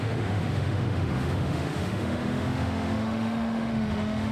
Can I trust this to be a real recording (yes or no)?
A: no